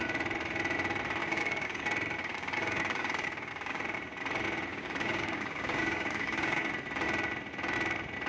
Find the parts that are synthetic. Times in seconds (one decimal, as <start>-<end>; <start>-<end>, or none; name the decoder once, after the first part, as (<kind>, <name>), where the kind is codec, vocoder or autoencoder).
1.2-1.8 (codec, DAC); 2.2-3.8; 4.7-6.7